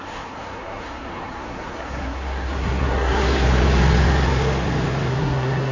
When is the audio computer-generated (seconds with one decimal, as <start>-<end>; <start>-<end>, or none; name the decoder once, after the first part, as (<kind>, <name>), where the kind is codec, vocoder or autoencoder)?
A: 0.0-3.5 (codec, SNAC); 5.1-5.7